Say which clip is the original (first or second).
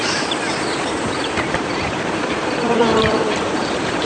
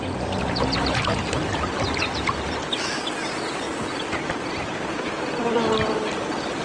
second